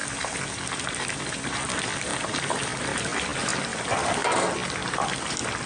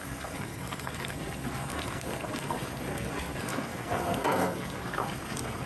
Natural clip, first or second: first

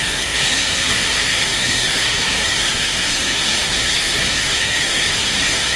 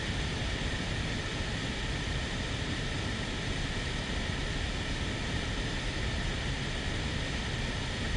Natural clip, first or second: second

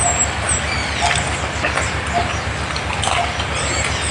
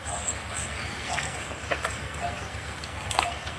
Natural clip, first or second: first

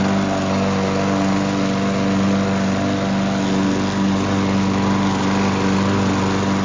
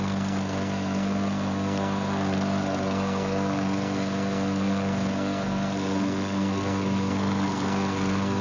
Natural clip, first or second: first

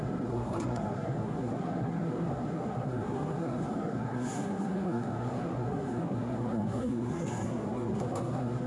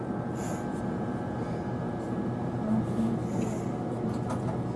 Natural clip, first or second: second